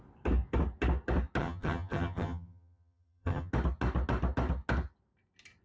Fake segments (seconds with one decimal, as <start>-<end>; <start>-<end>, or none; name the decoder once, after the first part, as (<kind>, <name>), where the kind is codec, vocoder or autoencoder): 1.4-3.5 (vocoder, HiFi-GAN)